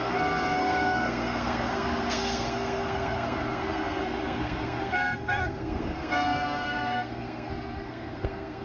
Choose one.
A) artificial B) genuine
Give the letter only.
A